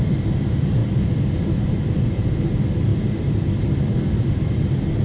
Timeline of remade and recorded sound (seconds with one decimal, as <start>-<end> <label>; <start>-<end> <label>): 0.0-5.0 remade